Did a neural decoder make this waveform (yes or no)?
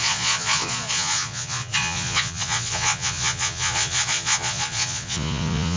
yes